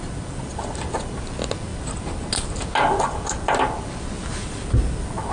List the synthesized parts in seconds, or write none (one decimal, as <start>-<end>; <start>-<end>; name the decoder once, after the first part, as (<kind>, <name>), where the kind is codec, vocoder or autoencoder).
none